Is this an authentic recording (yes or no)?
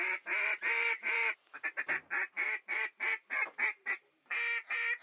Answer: yes